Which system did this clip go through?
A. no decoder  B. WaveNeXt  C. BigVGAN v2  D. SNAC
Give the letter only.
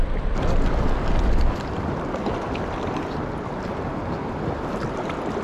A